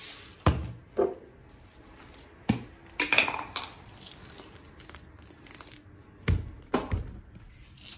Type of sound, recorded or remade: recorded